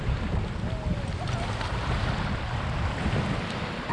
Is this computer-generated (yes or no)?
no